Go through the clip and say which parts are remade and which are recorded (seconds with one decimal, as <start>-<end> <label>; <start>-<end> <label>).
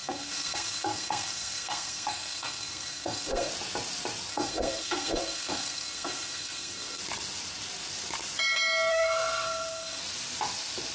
0.0-3.5 remade; 3.5-4.3 recorded; 4.3-7.0 remade; 7.0-8.9 recorded; 8.9-10.0 remade; 10.0-10.9 recorded